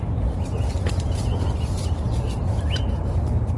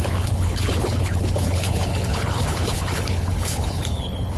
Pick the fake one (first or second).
second